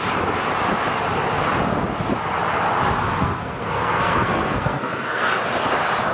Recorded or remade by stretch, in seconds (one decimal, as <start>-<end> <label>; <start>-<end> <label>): 0.0-3.2 recorded; 3.2-5.3 remade; 5.3-6.1 recorded